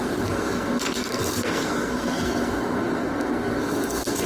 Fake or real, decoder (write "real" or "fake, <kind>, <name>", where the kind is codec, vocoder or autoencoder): fake, codec, SNAC